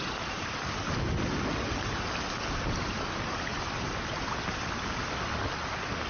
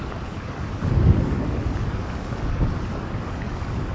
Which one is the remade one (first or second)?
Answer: second